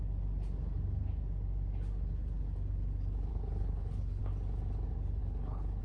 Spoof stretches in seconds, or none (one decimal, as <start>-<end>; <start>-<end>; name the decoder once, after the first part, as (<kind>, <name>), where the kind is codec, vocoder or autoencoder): 3.3-4.2 (codec, HILCodec); 5.2-5.8